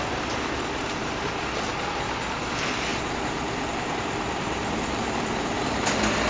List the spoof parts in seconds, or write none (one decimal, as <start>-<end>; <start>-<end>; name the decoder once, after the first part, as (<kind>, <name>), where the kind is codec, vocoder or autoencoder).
0.8-1.4 (vocoder, BigVGAN v2); 2.9-5.8